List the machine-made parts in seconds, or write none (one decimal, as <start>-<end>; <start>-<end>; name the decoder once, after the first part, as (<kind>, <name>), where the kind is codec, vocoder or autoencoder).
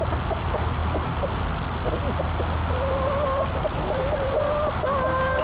none